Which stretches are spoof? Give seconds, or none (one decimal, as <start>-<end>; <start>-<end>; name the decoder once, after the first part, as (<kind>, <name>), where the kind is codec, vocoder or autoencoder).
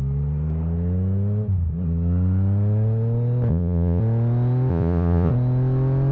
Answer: 3.5-4.0 (vocoder, Vocos); 4.7-5.3